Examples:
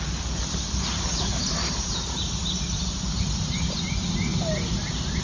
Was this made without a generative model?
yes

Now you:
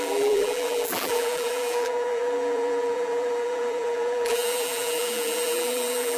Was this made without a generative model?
no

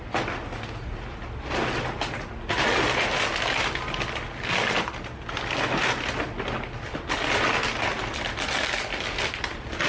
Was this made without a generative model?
yes